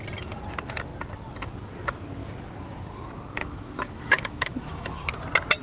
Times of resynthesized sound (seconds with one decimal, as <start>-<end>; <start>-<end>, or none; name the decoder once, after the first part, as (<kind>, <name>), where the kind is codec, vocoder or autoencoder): 3.4-5.1 (autoencoder, DAC-VAE)